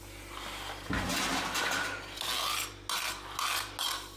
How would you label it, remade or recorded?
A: recorded